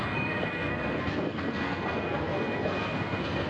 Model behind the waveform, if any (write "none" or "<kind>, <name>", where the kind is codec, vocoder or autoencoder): codec, SNAC